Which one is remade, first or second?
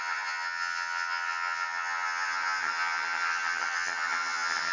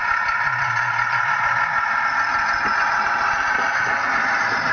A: first